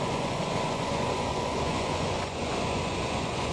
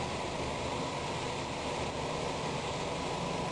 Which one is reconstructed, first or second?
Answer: first